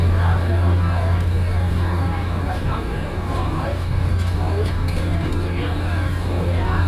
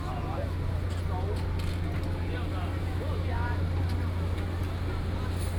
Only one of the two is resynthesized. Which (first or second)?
first